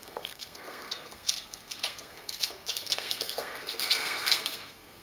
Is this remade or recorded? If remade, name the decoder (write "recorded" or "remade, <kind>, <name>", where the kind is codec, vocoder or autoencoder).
remade, codec, SNAC